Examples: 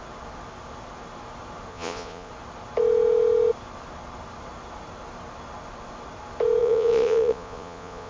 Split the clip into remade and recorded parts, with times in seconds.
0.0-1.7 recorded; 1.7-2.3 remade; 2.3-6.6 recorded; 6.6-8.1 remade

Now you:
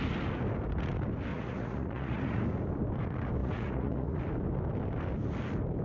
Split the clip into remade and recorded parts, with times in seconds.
0.0-1.3 recorded; 1.3-2.4 remade; 2.4-3.4 recorded; 3.4-4.2 remade; 4.2-5.8 recorded

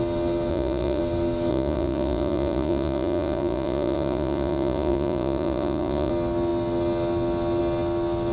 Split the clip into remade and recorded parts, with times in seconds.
0.0-0.5 recorded; 0.5-1.0 remade; 1.0-1.5 recorded; 1.5-6.1 remade; 6.1-8.3 recorded

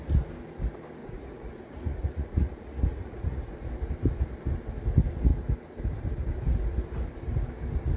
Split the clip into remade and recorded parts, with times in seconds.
0.0-1.0 recorded; 1.0-3.5 remade; 3.5-8.0 recorded

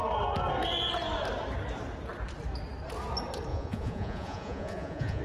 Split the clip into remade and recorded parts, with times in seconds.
0.0-3.5 recorded; 3.5-5.2 remade

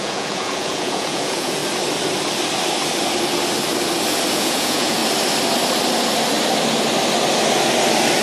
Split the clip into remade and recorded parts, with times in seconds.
0.0-1.6 remade; 1.6-4.3 recorded; 4.3-5.0 remade; 5.0-8.2 recorded

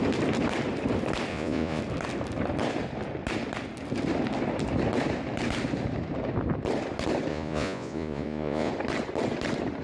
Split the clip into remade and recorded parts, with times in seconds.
0.0-1.3 recorded; 1.3-1.8 remade; 1.8-7.3 recorded; 7.3-8.7 remade; 8.7-9.8 recorded

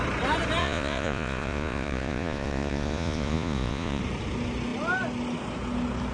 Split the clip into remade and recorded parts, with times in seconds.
0.0-0.6 recorded; 0.6-4.0 remade; 4.0-6.1 recorded